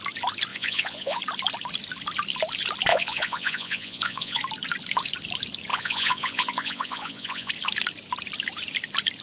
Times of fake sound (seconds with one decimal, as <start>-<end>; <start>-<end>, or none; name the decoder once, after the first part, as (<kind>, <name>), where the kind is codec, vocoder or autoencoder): 0.5-1.2 (vocoder, Vocos); 2.9-4.4; 5.7-7.5